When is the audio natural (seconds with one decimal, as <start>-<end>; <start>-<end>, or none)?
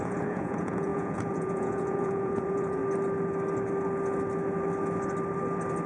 2.8-5.9